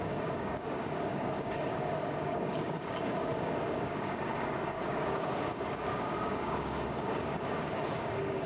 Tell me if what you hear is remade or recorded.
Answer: remade